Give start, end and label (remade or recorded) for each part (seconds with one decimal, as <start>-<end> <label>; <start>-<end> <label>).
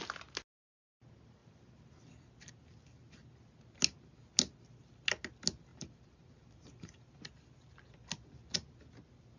0.0-1.4 recorded; 1.4-1.9 remade; 1.9-5.7 recorded; 5.7-7.2 remade; 7.2-9.4 recorded